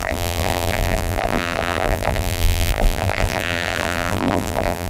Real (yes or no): no